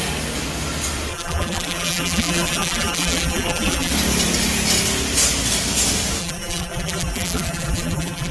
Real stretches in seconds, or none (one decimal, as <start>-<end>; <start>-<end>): 0.0-1.1; 3.9-6.2